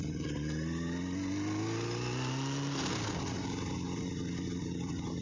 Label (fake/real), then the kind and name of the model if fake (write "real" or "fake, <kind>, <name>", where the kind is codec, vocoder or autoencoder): real